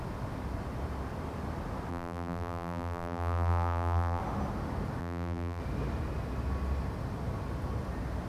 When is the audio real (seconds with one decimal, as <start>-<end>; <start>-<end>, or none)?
0.0-1.9; 4.2-5.0; 5.6-8.3